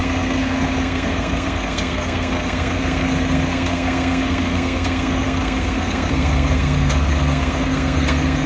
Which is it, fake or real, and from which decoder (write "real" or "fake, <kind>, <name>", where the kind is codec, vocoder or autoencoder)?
fake, codec, SNAC